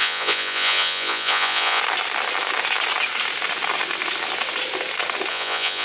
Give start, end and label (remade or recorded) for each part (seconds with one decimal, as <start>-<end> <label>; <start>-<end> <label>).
0.0-1.8 remade; 1.8-5.3 recorded; 5.3-5.8 remade